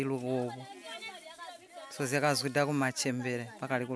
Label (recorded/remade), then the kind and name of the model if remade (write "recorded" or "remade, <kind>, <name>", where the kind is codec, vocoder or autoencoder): recorded